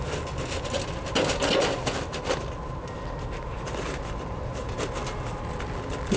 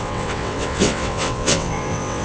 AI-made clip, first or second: second